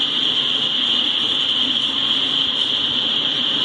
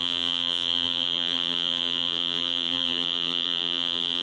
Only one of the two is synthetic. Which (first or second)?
second